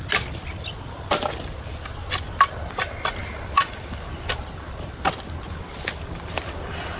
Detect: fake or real real